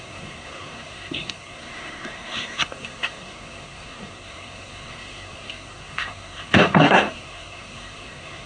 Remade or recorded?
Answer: remade